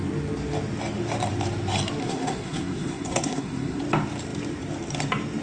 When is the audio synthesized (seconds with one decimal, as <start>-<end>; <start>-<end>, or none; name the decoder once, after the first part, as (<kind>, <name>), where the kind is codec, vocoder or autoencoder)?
2.0-3.8 (codec, SNAC)